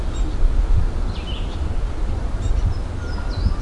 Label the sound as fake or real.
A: real